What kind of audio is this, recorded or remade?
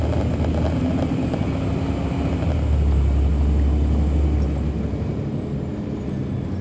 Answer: recorded